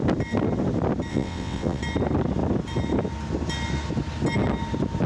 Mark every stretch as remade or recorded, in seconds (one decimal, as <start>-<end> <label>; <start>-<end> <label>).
0.0-1.1 recorded; 1.1-1.8 remade; 1.8-5.1 recorded